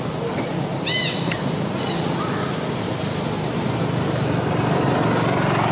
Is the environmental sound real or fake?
real